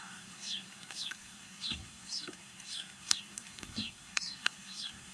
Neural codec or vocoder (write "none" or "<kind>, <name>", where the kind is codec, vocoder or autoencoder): codec, SNAC